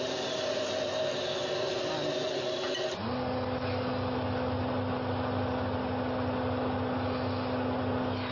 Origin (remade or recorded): recorded